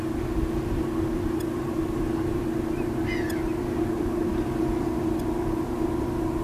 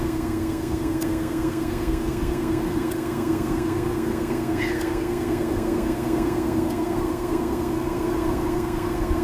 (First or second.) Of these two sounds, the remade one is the second